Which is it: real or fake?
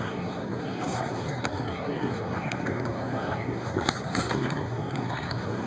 fake